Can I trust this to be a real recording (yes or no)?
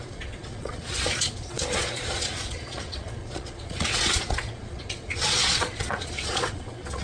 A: no